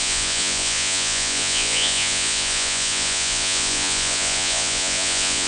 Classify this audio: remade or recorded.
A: remade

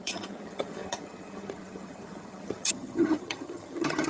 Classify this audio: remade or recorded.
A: remade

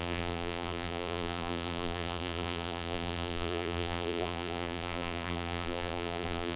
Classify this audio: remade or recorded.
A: remade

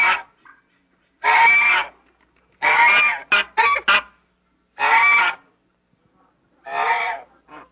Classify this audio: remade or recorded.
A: recorded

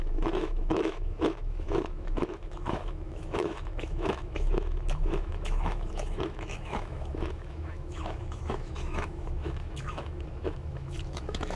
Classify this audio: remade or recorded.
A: remade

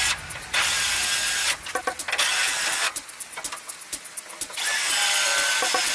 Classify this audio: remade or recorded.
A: recorded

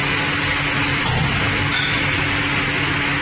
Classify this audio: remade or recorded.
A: recorded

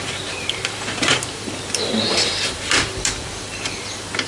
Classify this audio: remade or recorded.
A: remade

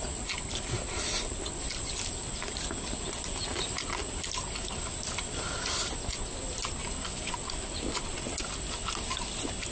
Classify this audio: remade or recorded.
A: recorded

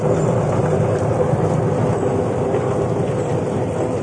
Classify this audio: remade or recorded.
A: recorded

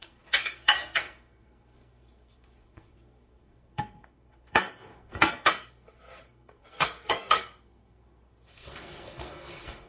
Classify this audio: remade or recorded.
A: remade